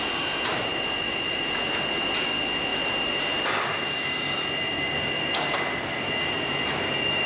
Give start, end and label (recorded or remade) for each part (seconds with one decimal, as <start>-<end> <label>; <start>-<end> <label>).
0.0-7.3 remade